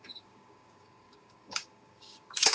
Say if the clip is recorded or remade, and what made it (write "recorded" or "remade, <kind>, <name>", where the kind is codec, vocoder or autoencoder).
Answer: remade, codec, DAC